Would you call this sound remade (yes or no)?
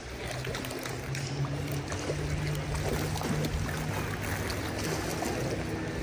no